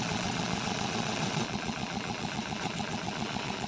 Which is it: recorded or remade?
remade